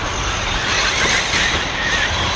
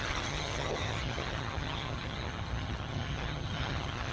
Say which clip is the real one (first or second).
first